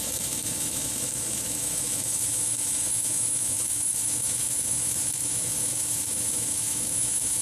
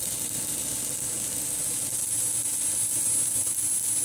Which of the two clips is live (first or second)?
second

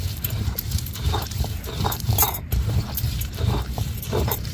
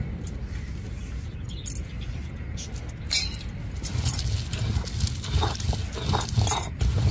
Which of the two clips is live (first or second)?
second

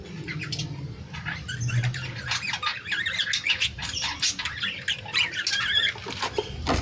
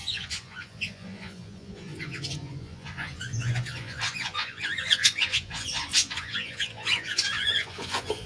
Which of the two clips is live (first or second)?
first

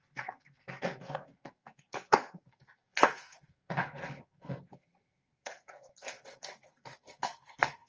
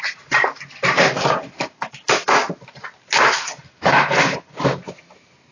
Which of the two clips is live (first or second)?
second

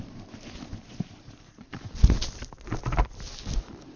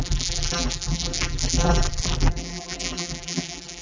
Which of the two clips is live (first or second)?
first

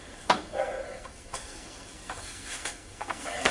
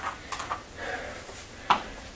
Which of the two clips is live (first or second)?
second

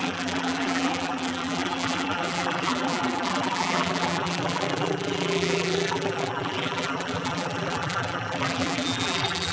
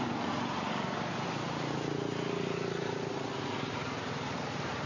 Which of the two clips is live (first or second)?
second